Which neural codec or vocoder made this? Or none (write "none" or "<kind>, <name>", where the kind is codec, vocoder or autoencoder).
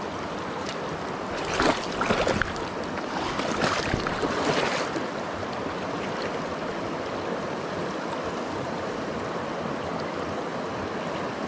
none